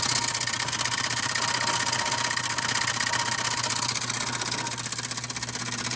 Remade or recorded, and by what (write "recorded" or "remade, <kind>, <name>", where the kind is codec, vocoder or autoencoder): recorded